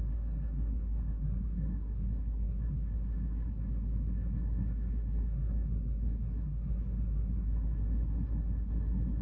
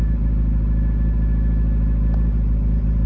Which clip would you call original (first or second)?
second